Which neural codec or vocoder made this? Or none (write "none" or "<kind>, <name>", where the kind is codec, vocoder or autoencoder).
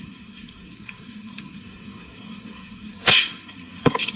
codec, SNAC